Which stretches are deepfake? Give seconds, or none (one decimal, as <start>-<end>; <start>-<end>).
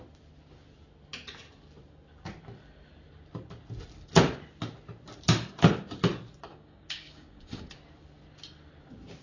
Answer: 6.5-7.7